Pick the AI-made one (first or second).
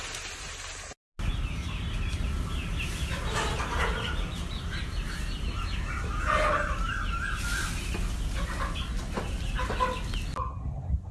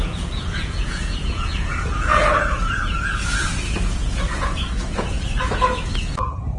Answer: second